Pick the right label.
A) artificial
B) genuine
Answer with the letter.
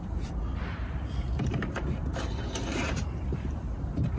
A